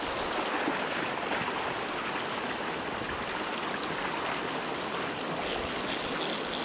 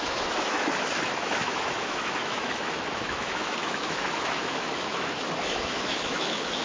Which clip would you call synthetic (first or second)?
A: second